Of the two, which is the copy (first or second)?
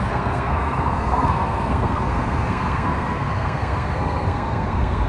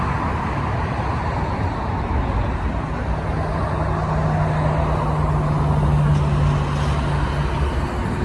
first